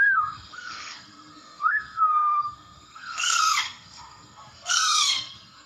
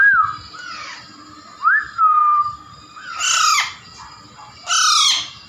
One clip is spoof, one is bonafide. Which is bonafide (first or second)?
second